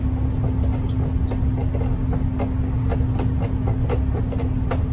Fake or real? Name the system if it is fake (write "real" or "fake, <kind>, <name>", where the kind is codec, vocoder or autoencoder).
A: real